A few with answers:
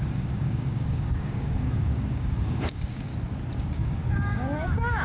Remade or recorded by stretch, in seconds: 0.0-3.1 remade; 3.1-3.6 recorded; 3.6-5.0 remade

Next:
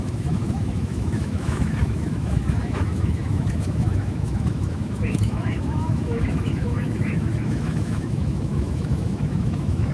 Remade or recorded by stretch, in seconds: 0.0-9.9 remade

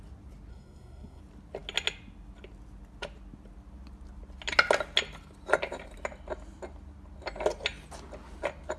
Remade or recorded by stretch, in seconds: 0.0-0.5 recorded; 0.5-1.2 remade; 1.2-8.8 recorded

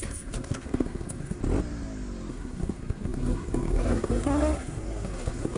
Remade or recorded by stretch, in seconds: 0.0-1.4 remade; 1.4-2.3 recorded; 2.3-5.6 remade